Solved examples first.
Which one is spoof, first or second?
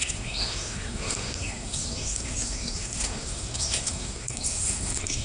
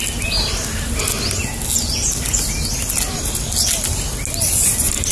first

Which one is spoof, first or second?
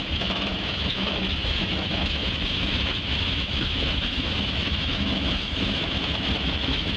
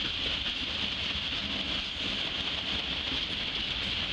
first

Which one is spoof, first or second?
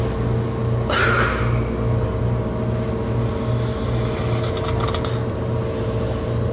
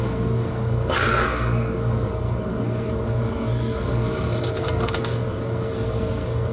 second